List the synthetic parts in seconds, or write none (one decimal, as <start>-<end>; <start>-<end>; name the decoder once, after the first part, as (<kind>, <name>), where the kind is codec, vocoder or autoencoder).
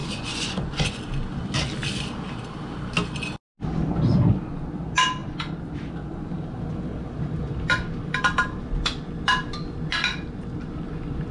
0.0-1.0 (vocoder, Vocos)